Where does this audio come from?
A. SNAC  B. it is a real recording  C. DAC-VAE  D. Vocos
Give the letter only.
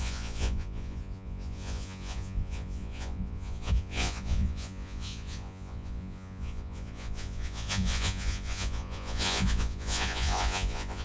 D